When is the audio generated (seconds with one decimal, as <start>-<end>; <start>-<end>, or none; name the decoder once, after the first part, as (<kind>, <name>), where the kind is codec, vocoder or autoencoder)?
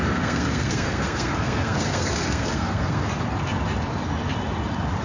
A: 0.0-3.0 (codec, SNAC)